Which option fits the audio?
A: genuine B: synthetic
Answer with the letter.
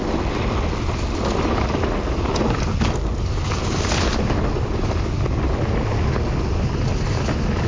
A